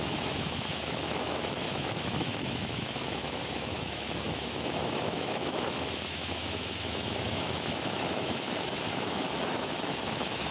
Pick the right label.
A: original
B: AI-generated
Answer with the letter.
B